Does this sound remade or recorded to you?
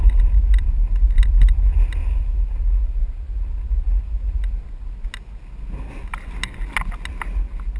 recorded